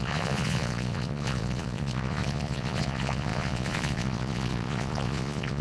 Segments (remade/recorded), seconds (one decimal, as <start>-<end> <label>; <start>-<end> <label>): 0.0-5.6 remade